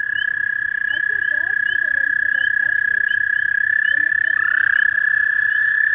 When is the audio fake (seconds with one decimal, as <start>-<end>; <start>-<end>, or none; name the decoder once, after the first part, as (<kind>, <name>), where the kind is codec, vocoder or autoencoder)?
0.8-4.1 (vocoder, BigVGAN v2)